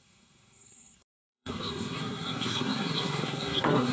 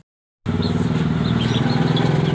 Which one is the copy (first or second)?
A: first